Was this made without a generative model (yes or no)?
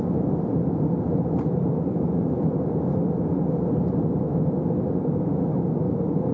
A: yes